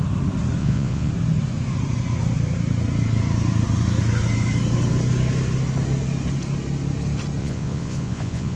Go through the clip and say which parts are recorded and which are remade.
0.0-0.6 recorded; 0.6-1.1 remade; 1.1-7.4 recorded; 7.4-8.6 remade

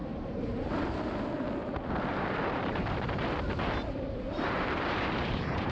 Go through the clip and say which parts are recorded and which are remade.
0.0-0.9 remade; 0.9-2.1 recorded; 2.1-5.7 remade

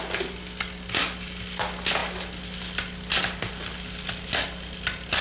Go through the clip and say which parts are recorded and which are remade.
0.0-5.2 recorded

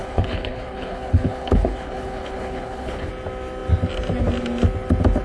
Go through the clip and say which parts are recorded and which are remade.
0.0-3.1 remade; 3.1-5.2 recorded

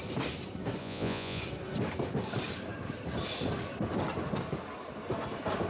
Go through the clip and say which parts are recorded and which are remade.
0.0-0.8 recorded; 0.8-1.4 remade; 1.4-5.7 recorded

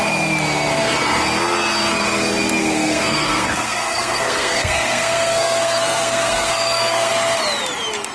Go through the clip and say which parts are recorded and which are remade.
0.0-2.6 recorded; 2.6-7.1 remade; 7.1-8.1 recorded

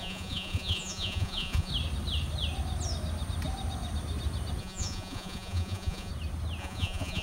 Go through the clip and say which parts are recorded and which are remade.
0.0-1.7 remade; 1.7-4.6 recorded; 4.6-6.1 remade; 6.1-6.6 recorded; 6.6-7.2 remade